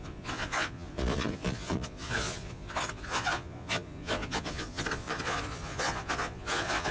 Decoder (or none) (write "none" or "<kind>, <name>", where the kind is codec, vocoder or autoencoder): vocoder, Vocos